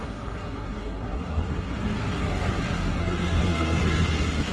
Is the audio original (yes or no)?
no